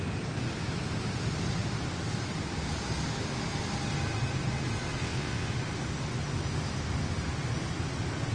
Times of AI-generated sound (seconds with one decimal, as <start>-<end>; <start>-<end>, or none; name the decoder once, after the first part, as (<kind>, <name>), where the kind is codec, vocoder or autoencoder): 5.0-5.5 (vocoder, WaveNeXt)